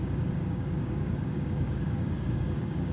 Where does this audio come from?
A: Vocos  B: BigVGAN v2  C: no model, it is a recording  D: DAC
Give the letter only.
D